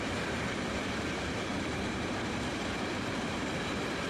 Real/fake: fake